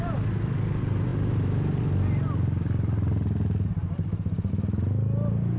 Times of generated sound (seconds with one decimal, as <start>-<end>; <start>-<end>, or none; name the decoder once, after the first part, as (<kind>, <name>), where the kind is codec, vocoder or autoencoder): none